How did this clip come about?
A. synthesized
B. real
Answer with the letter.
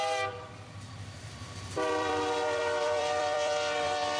A